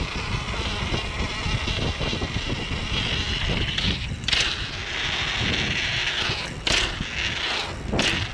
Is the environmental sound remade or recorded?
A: recorded